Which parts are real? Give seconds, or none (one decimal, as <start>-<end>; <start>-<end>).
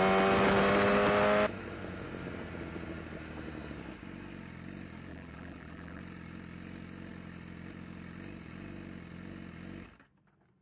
0.0-5.1; 6.0-10.6